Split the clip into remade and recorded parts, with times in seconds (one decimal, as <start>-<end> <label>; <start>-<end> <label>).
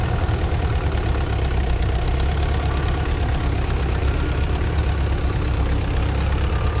0.0-4.0 recorded; 4.0-4.8 remade; 4.8-6.8 recorded